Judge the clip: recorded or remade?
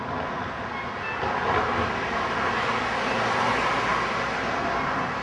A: recorded